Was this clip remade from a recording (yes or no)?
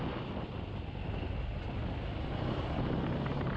no